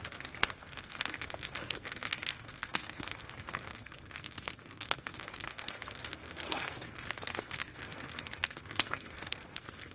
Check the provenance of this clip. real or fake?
fake